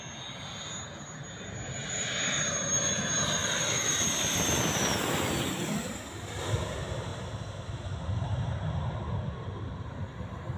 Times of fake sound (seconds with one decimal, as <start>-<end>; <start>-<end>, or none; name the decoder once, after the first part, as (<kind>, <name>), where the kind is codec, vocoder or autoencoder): 1.8-3.0 (vocoder, BigVGAN v2); 3.4-5.9; 7.1-7.7